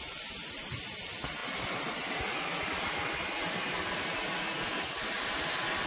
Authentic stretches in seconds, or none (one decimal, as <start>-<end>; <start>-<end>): 0.0-5.9